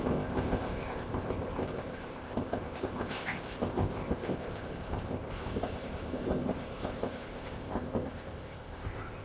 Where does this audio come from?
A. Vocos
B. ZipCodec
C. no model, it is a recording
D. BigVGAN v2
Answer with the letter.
B